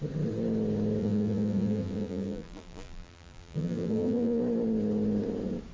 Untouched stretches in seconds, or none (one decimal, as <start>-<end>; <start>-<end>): 0.0-1.0; 4.4-5.7